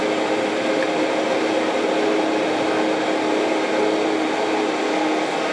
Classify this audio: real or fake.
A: real